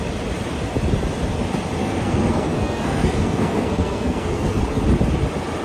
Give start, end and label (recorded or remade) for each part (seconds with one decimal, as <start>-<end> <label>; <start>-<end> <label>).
0.0-1.8 recorded; 1.8-4.6 remade; 4.6-5.6 recorded